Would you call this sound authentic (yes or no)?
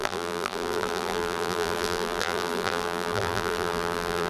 no